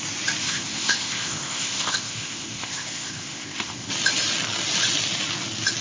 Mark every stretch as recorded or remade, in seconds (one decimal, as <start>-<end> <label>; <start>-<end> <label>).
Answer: 0.0-0.4 recorded; 0.4-3.9 remade; 3.9-5.8 recorded